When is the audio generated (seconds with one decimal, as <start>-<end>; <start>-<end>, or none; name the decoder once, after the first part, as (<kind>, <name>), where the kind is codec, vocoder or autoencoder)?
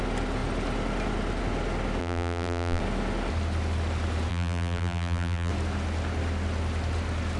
2.0-2.8 (vocoder, BigVGAN v2); 4.3-5.5